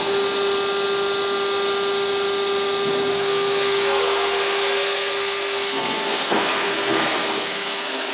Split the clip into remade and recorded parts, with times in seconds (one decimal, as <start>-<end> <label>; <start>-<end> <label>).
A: 0.0-3.1 recorded; 3.1-8.1 remade